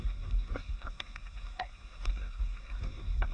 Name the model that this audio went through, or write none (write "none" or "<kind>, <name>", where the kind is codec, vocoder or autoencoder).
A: codec, SNAC